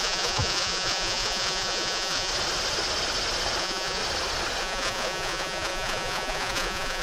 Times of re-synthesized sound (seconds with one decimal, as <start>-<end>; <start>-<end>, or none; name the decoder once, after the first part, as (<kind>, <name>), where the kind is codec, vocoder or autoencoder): 0.0-2.3 (vocoder, Vocos); 3.6-4.0; 4.6-7.0